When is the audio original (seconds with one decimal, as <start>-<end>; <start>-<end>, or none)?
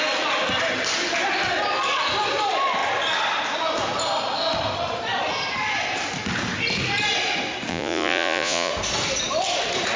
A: 0.0-7.7; 8.7-10.0